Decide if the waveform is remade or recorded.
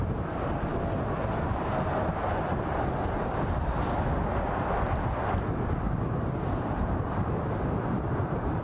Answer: recorded